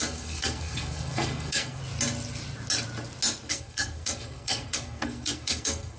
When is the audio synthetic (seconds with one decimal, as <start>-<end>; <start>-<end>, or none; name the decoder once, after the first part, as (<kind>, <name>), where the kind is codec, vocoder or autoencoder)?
0.0-1.8 (codec, SNAC); 3.5-6.0